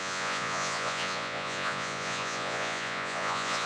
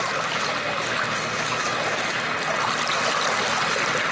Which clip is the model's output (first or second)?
first